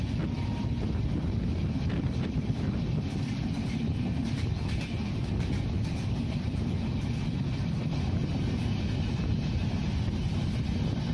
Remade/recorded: recorded